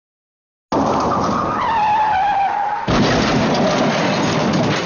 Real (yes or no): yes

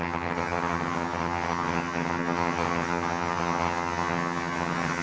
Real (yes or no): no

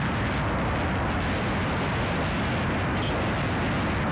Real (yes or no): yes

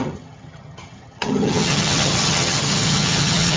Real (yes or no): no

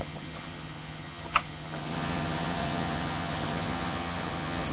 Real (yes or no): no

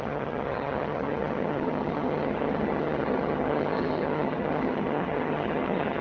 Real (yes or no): no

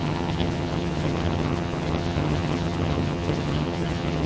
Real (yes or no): no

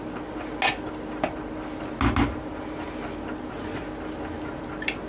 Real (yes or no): yes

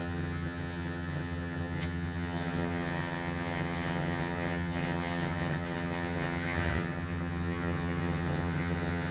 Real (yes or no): no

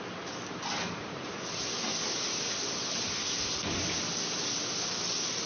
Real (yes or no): yes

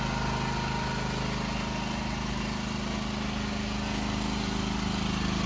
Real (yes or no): yes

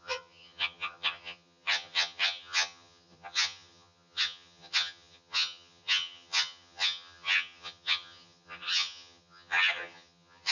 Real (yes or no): no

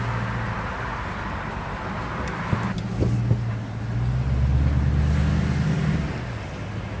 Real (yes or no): yes